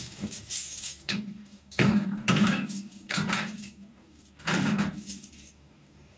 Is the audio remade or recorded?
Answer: remade